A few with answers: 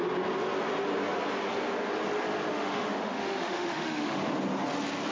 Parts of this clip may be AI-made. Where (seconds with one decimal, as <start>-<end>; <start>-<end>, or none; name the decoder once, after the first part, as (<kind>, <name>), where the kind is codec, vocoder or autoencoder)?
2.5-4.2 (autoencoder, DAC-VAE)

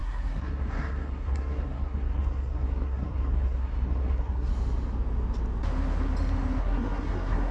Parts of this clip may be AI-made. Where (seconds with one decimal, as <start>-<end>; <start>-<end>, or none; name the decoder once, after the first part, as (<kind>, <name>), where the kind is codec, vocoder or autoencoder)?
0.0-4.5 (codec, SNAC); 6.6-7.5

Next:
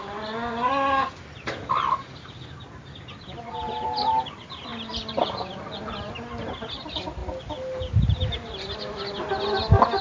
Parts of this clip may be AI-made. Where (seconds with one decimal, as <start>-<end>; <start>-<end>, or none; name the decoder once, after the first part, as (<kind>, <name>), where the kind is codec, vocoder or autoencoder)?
4.7-6.0 (vocoder, BigVGAN v2)

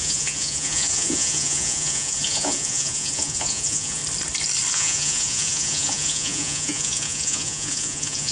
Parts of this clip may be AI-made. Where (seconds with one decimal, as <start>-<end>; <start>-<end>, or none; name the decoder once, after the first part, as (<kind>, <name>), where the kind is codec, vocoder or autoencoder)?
0.0-4.0 (vocoder, Vocos); 4.7-8.3